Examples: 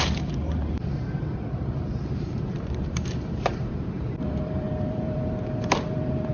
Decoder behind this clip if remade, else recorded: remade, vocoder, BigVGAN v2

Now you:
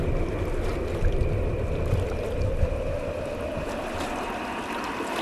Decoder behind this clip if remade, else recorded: recorded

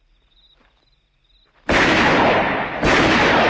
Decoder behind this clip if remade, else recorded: recorded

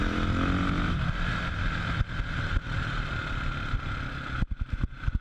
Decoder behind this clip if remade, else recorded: remade, vocoder, BigVGAN v2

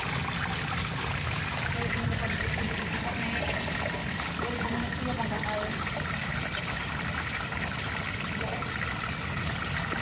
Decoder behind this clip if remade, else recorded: recorded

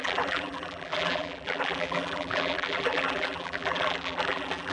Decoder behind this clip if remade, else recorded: remade, vocoder, BigVGAN v2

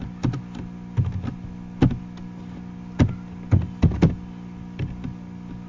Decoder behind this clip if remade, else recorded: recorded